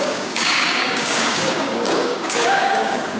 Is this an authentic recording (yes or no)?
no